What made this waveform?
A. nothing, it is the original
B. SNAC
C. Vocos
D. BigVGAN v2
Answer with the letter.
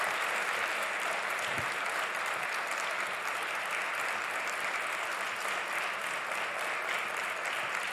A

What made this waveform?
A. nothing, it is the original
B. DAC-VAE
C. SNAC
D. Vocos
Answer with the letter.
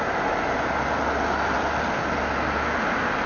A